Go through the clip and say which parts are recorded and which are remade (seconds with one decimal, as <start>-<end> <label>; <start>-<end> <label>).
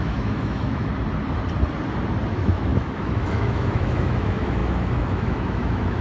0.0-0.9 remade; 0.9-2.3 recorded; 2.3-6.0 remade